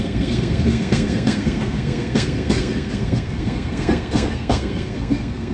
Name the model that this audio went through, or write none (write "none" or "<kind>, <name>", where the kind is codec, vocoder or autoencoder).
codec, SNAC